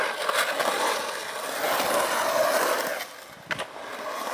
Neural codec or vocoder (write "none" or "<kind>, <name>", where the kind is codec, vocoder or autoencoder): none